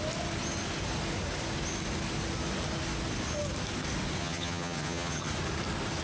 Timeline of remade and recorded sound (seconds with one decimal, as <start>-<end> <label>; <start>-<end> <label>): 0.0-4.2 recorded; 4.2-5.3 remade; 5.3-6.0 recorded